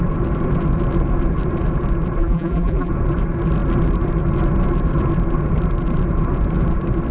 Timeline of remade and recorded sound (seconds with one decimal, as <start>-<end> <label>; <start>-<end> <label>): 0.0-2.2 recorded; 2.2-2.9 remade; 2.9-7.1 recorded